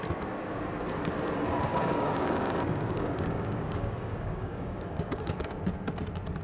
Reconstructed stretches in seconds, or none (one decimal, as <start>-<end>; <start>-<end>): 1.7-5.5